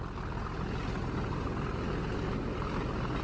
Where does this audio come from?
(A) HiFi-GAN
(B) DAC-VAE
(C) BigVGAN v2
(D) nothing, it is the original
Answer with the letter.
D